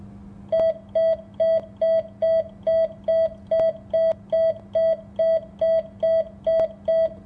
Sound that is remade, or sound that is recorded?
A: recorded